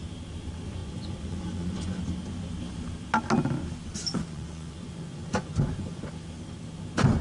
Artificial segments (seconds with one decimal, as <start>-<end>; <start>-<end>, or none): 0.8-2.0; 4.1-6.1